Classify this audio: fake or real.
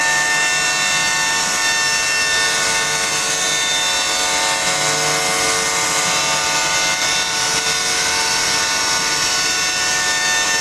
real